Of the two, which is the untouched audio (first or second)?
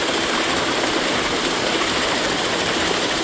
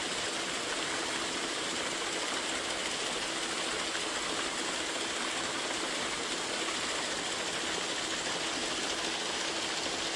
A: second